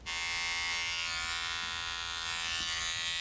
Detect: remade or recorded recorded